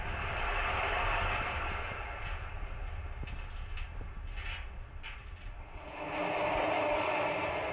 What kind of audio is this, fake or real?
real